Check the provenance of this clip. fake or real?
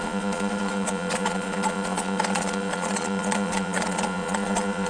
fake